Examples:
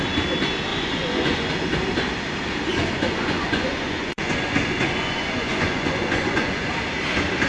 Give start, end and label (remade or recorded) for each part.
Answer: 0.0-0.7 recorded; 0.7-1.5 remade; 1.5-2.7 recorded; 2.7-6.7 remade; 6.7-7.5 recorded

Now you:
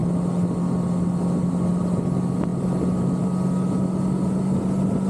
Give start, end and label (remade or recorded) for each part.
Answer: 0.0-5.1 recorded